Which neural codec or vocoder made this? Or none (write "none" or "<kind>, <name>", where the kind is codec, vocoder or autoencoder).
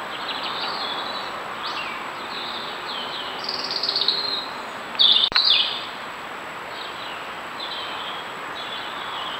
vocoder, BigVGAN v2